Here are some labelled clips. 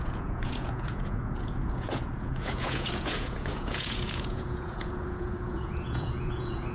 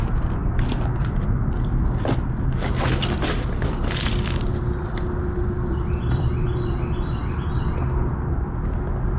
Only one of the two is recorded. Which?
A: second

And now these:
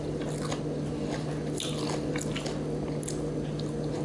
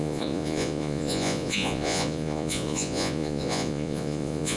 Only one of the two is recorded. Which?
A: first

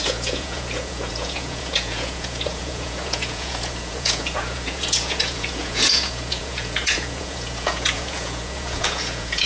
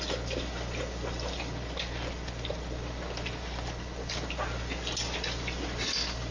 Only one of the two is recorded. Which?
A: second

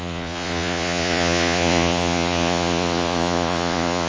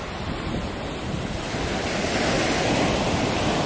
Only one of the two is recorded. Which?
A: second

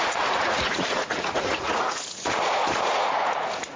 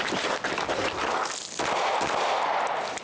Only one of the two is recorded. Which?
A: second